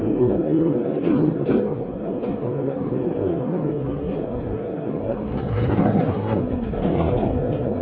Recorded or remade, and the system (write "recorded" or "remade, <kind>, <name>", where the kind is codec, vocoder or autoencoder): remade, codec, SNAC